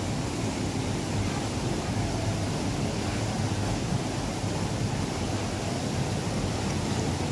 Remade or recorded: recorded